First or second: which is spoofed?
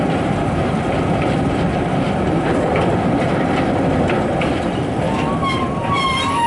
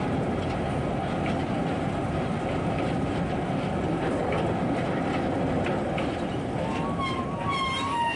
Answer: first